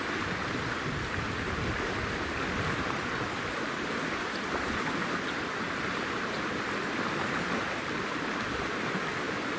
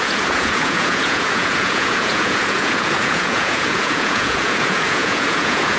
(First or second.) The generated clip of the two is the second